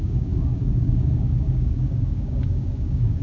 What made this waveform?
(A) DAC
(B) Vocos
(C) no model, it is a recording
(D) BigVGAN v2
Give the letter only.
A